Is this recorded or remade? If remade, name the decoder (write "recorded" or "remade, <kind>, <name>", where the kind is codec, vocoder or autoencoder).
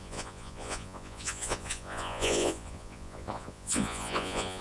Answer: remade, vocoder, Vocos